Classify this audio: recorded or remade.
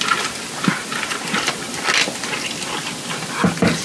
recorded